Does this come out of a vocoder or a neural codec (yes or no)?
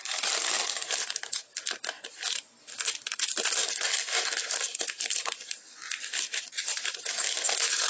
no